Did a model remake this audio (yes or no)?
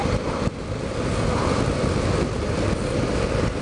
no